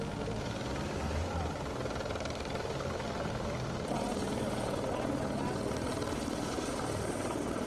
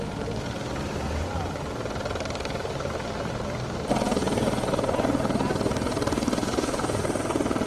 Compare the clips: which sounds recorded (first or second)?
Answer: first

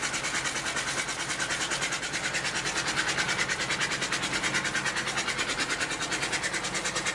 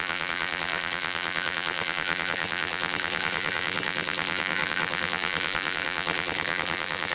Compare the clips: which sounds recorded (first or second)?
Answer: first